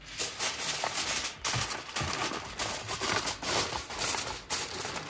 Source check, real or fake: real